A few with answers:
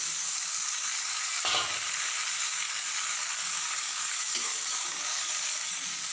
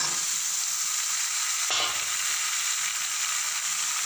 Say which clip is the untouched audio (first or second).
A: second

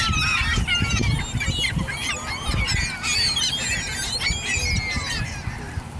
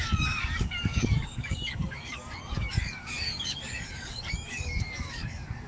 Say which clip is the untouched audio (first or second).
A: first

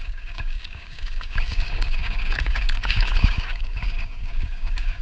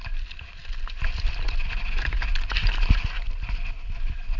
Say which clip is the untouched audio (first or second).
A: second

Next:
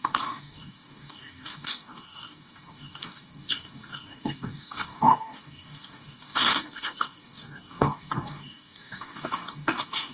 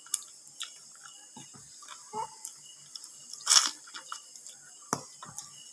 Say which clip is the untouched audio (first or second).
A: second